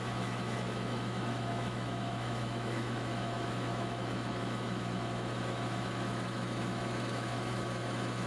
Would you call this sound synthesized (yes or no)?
yes